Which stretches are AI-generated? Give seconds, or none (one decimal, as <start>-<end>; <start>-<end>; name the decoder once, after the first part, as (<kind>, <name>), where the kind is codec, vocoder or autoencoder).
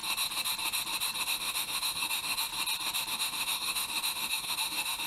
1.2-2.5 (autoencoder, DAC-VAE); 3.1-5.1